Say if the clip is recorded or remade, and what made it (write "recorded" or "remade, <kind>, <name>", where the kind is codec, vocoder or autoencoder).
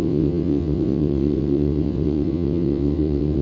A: remade, vocoder, WaveNeXt